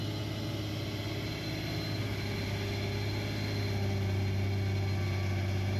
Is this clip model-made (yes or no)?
no